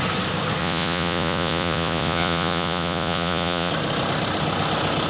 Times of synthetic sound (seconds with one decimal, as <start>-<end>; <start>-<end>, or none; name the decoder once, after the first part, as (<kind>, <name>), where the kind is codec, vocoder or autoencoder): 0.6-3.7 (vocoder, Vocos)